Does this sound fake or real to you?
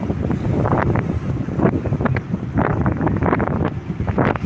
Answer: real